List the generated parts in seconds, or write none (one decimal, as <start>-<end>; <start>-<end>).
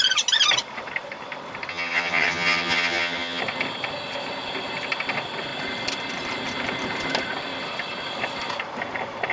1.7-3.4